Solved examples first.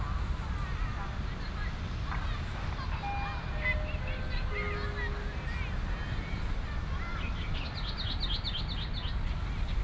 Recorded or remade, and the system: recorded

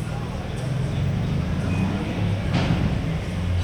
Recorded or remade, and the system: recorded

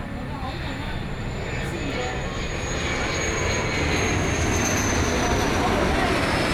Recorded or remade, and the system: recorded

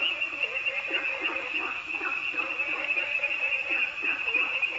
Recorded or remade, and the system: recorded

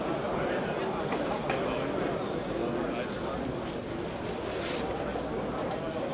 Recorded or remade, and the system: recorded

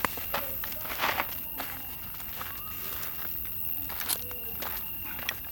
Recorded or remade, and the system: recorded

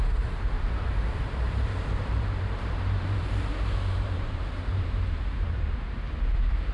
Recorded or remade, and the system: remade, vocoder, BigVGAN v2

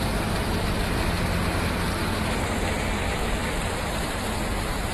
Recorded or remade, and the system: recorded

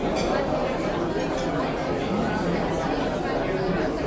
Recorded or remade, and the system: recorded